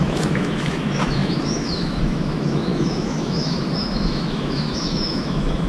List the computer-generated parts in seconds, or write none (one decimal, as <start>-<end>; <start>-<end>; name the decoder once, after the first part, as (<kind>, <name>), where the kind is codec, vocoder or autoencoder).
0.0-5.7 (autoencoder, DAC-VAE)